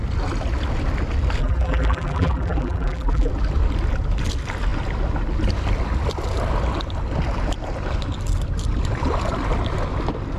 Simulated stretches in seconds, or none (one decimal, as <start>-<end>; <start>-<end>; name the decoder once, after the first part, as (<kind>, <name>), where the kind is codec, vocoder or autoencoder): 1.4-3.3 (vocoder, BigVGAN v2)